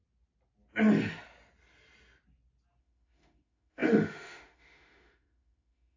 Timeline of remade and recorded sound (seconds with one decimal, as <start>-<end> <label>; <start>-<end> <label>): 0.0-2.8 recorded; 2.8-6.0 remade